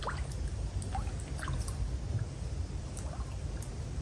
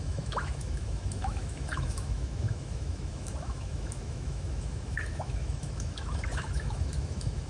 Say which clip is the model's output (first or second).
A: second